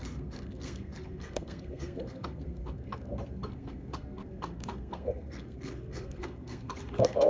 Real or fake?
fake